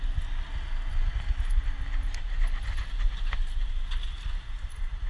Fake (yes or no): no